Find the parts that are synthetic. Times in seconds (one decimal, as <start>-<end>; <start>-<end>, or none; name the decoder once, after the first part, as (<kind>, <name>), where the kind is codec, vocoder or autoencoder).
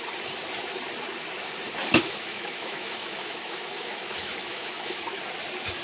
1.8-5.2 (autoencoder, DAC-VAE)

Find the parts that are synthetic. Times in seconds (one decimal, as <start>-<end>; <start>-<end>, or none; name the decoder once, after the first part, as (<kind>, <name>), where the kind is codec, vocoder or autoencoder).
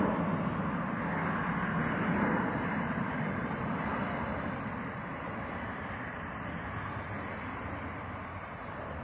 1.8-6.3 (vocoder, BigVGAN v2)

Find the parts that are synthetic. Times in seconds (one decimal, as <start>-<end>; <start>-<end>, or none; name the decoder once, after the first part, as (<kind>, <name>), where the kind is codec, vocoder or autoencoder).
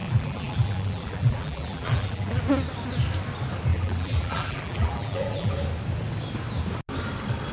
0.0-2.4 (vocoder, BigVGAN v2); 3.7-5.5